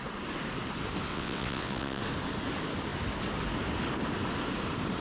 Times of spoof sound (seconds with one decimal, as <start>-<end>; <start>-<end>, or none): 1.1-2.0